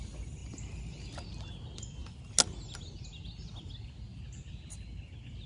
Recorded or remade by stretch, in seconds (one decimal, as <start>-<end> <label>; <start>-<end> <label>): 0.0-5.5 recorded